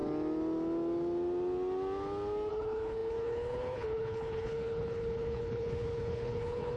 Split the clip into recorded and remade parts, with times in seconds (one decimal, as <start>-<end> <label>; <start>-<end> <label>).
0.0-2.5 recorded; 2.5-6.8 remade